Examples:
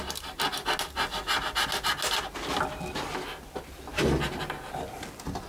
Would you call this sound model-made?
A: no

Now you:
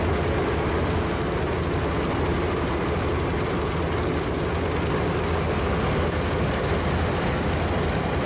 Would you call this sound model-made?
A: no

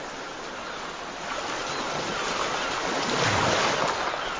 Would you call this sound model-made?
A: no